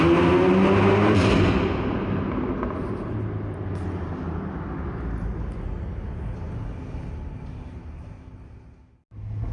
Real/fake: real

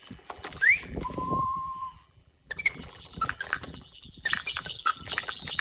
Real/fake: fake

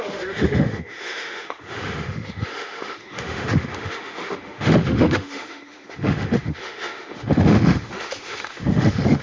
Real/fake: fake